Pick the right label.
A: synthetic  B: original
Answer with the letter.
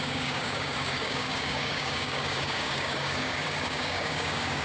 A